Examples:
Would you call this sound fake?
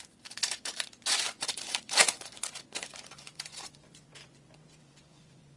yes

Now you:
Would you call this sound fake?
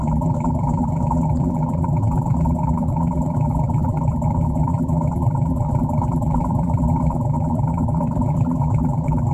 yes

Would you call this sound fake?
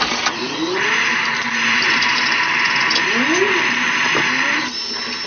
no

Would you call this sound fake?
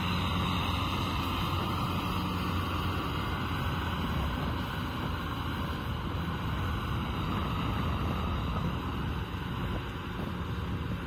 no